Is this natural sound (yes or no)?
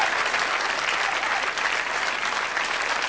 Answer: yes